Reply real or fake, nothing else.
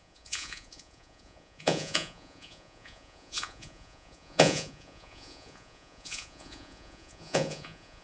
fake